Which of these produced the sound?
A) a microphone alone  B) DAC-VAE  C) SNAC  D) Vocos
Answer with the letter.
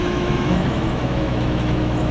B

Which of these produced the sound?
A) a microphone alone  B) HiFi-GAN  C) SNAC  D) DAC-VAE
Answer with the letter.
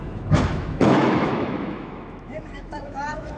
D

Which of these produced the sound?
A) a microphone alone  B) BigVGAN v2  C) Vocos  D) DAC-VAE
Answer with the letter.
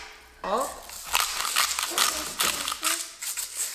A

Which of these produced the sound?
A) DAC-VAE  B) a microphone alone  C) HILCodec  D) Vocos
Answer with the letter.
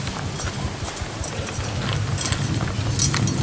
B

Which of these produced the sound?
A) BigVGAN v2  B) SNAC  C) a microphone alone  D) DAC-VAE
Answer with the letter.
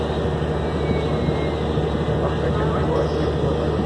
C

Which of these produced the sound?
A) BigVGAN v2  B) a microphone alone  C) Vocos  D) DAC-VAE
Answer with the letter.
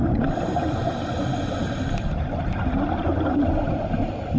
B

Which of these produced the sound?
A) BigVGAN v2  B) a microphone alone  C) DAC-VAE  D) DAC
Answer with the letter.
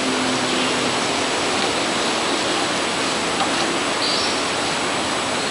B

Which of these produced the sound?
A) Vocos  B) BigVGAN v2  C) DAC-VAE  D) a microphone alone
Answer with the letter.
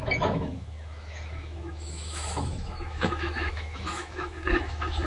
C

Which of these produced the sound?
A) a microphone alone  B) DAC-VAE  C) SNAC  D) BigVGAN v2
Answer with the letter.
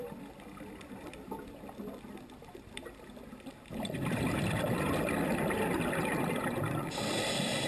A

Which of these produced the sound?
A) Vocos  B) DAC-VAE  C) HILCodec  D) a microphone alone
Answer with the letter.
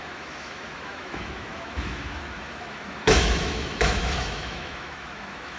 B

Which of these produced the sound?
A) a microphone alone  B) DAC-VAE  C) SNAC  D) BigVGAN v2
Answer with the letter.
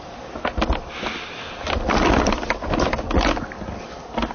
A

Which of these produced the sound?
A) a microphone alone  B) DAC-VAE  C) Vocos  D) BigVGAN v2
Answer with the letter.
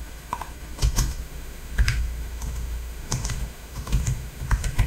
B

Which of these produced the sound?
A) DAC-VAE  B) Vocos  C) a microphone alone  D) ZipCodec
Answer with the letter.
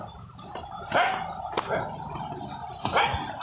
C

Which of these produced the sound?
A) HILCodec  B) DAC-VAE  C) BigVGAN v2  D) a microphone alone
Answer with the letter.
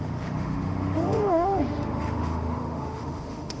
B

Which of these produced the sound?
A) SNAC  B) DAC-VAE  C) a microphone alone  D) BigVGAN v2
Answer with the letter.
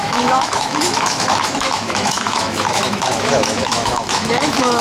B